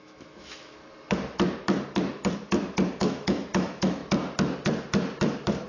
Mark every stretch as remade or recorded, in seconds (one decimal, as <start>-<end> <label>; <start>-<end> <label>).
0.0-0.8 remade; 0.8-3.0 recorded; 3.0-4.0 remade; 4.0-5.7 recorded